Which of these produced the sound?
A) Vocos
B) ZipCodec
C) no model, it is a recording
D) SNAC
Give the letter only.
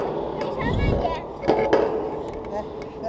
C